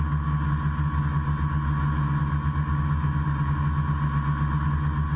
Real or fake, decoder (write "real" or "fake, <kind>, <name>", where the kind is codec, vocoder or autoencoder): real